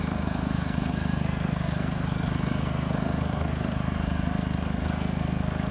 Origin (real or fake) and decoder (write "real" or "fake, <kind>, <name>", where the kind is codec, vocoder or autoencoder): fake, codec, SNAC